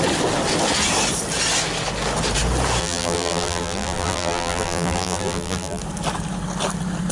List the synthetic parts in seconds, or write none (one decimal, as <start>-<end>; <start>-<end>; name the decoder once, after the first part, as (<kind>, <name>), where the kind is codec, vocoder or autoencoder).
2.8-5.8 (vocoder, BigVGAN v2)